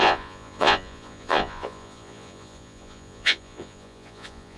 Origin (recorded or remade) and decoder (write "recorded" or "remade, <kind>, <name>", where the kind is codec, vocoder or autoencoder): remade, vocoder, Vocos